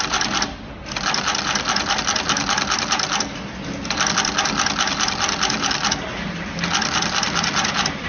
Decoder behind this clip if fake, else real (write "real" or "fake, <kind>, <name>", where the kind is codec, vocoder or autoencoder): real